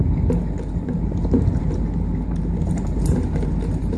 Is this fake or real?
fake